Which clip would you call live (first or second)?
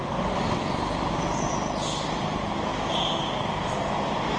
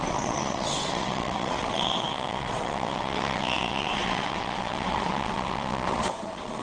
first